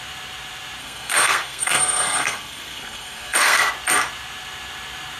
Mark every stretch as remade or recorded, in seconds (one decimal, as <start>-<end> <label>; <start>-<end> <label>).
0.0-0.8 recorded; 0.8-3.7 remade; 3.7-5.2 recorded